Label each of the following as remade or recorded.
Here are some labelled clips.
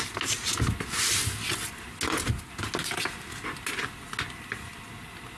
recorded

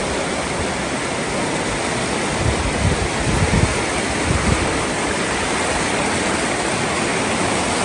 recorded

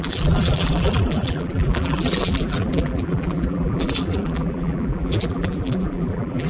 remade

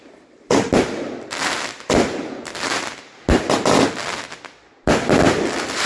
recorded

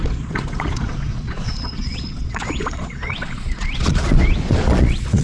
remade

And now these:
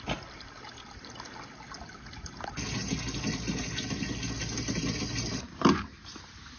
recorded